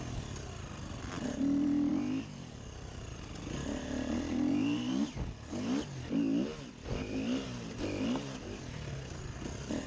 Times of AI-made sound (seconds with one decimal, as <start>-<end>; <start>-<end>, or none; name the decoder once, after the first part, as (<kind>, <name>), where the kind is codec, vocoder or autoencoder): none